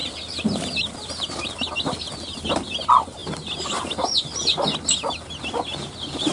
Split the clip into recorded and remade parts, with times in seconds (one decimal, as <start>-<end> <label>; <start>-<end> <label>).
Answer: 0.0-1.9 remade; 1.9-3.2 recorded; 3.2-4.4 remade; 4.4-6.3 recorded